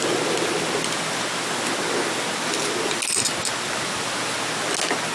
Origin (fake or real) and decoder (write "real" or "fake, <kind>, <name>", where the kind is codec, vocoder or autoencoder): real